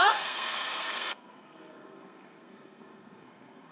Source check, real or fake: fake